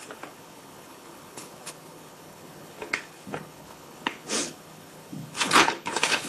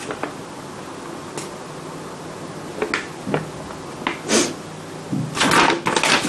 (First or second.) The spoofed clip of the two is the first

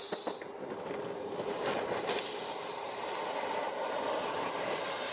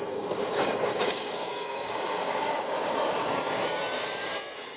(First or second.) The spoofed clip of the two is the second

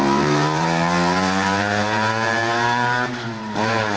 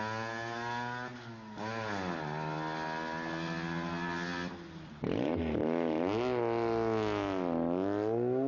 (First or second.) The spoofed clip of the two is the first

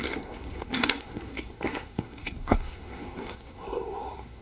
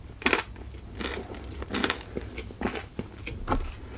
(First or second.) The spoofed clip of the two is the first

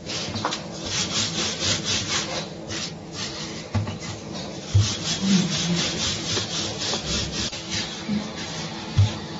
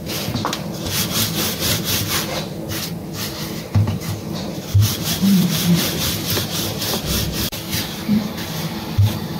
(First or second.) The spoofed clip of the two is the second